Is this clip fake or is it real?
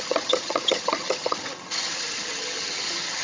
fake